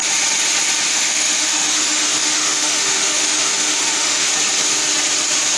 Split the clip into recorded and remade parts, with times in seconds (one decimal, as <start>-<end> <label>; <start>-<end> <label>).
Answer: 0.0-0.9 recorded; 0.9-4.3 remade; 4.3-5.6 recorded